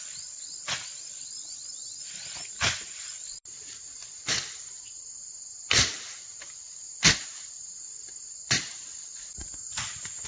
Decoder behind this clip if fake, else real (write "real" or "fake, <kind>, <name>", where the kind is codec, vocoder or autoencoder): real